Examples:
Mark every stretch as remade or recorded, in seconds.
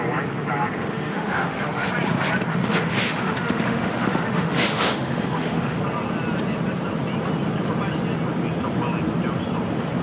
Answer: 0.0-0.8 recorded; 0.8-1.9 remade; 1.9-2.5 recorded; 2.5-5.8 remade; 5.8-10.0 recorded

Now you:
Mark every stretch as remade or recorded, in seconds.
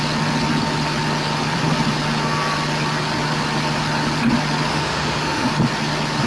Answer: 0.0-4.7 recorded; 4.7-5.5 remade; 5.5-6.3 recorded